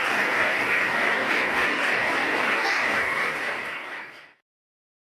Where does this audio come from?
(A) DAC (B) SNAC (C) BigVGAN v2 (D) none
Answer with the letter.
A